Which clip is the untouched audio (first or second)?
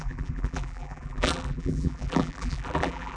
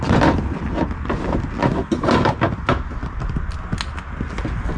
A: second